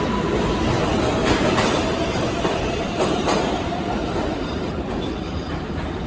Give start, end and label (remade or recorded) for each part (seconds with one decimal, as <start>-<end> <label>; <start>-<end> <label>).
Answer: 0.0-1.2 recorded; 1.2-4.9 remade; 4.9-6.1 recorded